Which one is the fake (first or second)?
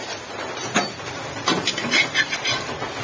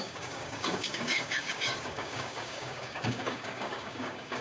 second